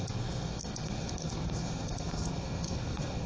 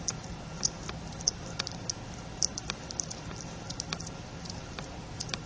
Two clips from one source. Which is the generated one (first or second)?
first